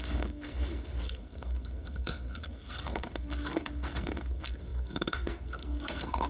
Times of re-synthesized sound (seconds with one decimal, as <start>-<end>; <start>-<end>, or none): 0.0-6.3